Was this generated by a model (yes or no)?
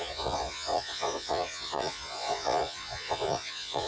yes